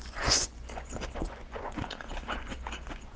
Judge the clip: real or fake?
fake